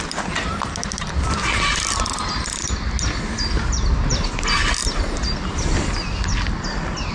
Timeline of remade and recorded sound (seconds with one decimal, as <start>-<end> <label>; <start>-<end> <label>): 0.0-7.1 recorded